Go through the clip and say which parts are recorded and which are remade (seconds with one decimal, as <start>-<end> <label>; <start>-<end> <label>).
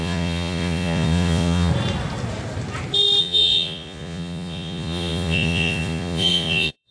0.0-1.7 remade; 1.7-3.2 recorded; 3.2-6.9 remade